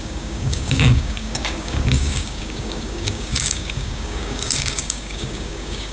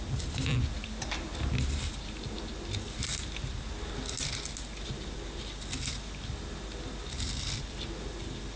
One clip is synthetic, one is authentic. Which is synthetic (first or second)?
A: first